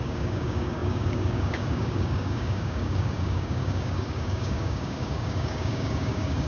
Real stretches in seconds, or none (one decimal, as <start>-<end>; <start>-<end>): none